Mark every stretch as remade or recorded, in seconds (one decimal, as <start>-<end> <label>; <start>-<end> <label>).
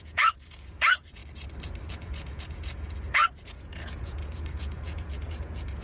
0.0-1.2 remade; 1.2-1.9 recorded; 1.9-5.8 remade